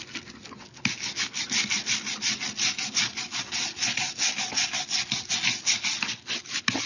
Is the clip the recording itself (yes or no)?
yes